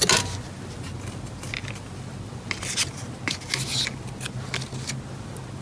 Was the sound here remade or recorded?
recorded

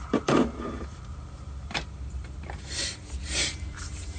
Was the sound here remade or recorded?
remade